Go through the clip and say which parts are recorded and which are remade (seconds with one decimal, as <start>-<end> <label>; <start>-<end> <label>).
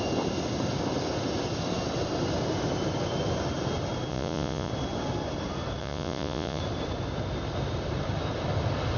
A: 0.0-4.1 recorded; 4.1-4.7 remade; 4.7-5.8 recorded; 5.8-6.6 remade; 6.6-9.0 recorded